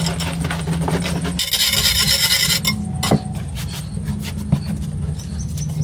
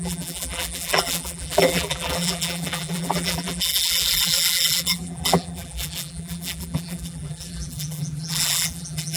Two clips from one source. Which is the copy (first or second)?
second